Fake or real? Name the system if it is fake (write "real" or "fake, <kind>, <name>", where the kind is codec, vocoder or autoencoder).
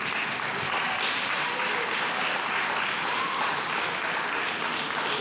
real